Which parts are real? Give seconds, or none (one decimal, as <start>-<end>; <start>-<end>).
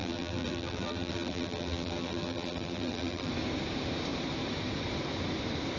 3.3-5.8